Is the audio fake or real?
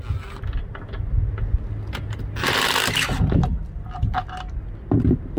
real